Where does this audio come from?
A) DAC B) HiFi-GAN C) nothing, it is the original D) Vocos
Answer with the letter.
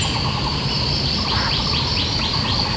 C